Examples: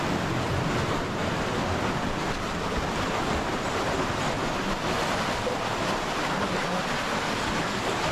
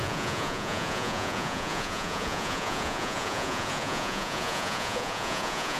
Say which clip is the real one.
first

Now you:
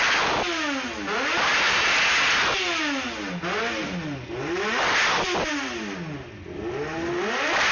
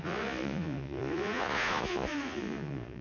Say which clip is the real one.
first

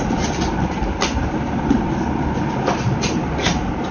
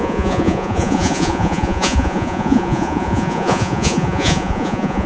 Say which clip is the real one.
first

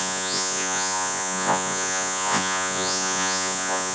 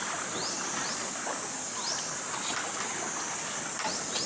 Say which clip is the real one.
second